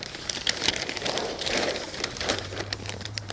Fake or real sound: fake